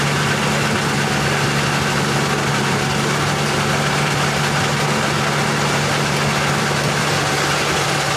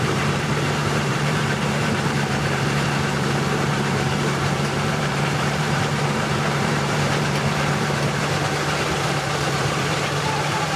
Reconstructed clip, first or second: second